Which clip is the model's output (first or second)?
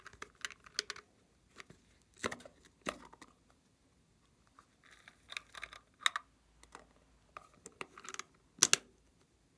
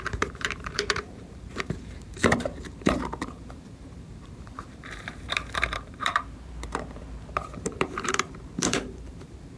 second